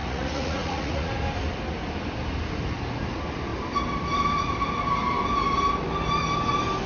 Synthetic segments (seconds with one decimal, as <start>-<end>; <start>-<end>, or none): 0.0-1.1